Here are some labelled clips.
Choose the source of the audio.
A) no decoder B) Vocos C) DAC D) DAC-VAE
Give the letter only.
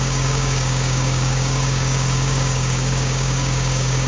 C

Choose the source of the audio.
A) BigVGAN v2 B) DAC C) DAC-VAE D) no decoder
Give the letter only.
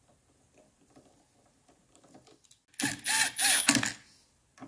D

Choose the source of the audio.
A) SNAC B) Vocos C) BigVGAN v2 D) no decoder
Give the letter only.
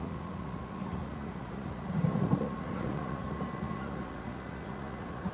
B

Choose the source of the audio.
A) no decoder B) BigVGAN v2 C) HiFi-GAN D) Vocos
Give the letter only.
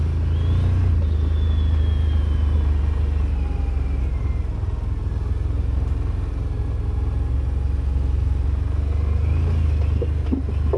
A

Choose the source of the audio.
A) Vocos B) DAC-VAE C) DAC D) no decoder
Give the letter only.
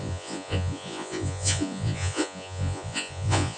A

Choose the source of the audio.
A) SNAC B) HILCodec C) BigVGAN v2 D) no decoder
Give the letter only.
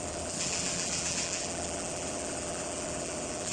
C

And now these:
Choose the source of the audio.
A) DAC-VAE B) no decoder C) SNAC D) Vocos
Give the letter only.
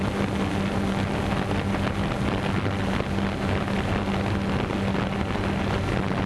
B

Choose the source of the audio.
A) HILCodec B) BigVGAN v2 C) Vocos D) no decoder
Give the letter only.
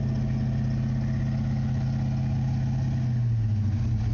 D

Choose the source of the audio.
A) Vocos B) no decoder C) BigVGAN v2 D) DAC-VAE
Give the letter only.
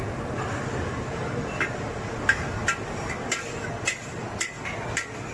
B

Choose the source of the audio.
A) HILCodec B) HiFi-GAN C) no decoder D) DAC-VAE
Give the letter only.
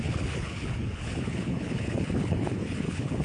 A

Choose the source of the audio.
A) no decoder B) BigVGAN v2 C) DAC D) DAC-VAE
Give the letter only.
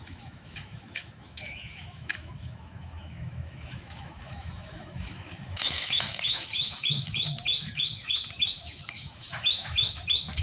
D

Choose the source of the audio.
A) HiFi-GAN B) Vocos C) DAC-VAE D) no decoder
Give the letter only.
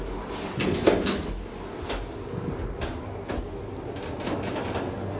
D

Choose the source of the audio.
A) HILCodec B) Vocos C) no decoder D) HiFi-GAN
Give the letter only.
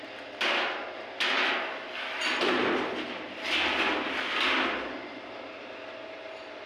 C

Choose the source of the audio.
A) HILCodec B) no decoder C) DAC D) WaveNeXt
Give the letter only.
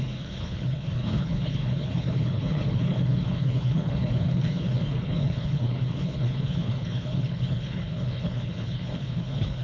A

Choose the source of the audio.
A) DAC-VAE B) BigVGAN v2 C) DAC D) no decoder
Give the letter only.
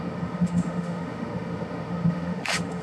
A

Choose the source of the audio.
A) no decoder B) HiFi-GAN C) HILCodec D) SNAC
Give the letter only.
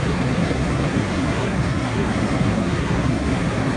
D